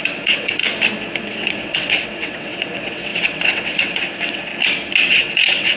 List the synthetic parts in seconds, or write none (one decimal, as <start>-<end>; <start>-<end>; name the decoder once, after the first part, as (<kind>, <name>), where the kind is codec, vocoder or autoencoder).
0.0-0.6 (vocoder, WaveNeXt); 1.2-4.5; 5.0-5.8

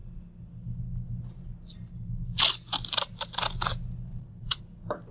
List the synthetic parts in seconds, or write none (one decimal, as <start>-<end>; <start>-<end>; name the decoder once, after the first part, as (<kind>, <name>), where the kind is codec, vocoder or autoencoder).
4.1-4.6 (vocoder, WaveNeXt)

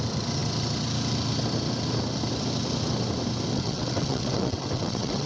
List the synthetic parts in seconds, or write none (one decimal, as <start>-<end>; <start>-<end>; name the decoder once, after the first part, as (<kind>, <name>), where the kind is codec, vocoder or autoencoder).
3.5-5.3 (vocoder, WaveNeXt)